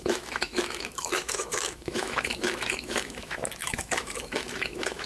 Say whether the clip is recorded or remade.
remade